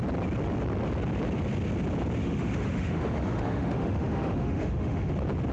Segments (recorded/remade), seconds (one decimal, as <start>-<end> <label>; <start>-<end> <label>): 0.0-2.2 recorded; 2.2-5.1 remade; 5.1-5.5 recorded